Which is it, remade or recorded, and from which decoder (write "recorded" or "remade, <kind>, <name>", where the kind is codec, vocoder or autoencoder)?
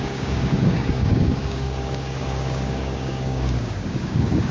remade, codec, DAC